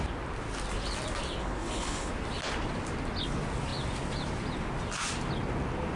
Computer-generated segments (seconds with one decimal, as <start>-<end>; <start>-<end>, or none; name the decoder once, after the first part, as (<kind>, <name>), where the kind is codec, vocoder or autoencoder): 1.4-2.1 (codec, HILCodec)